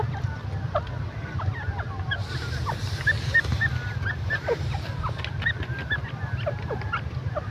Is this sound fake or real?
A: real